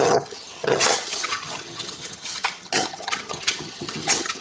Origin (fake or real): fake